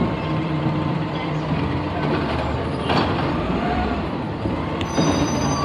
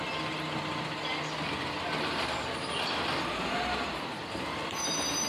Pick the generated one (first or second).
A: first